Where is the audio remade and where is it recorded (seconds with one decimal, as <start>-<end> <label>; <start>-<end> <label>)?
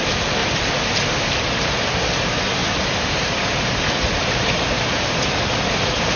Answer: 0.0-0.4 recorded; 0.4-1.4 remade; 1.4-2.6 recorded; 2.6-3.5 remade; 3.5-6.2 recorded